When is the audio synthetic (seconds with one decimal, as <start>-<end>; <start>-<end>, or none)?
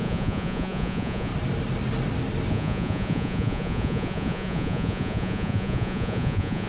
0.0-1.3; 2.5-6.7